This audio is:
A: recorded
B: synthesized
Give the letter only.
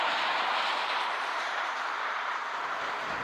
B